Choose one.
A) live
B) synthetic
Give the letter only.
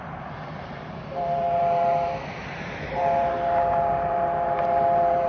B